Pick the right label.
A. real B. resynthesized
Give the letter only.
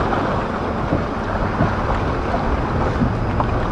A